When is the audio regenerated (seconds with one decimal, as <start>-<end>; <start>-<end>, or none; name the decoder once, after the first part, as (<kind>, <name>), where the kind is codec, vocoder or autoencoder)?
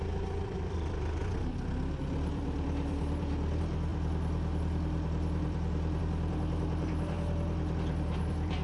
0.0-8.6 (vocoder, BigVGAN v2)